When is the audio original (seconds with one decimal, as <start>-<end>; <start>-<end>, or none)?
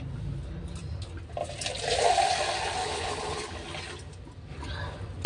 0.0-2.8; 3.5-5.3